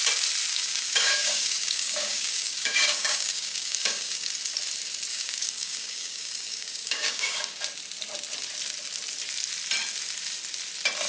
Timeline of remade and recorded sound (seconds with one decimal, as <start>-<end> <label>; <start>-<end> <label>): 0.0-0.5 recorded; 0.5-4.3 remade; 4.3-5.1 recorded; 5.1-7.6 remade; 7.6-11.1 recorded